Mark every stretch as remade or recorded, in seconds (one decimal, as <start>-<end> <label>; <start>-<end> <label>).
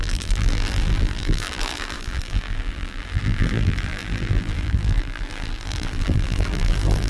0.0-7.1 remade